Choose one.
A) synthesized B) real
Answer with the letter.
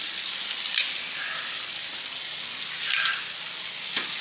B